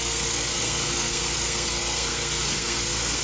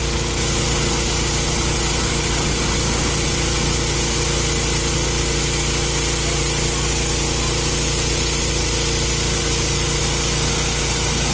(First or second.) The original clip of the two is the second